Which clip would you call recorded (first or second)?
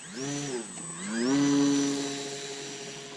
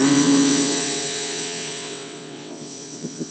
first